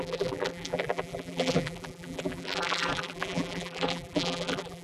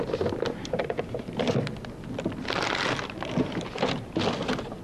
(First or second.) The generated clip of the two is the first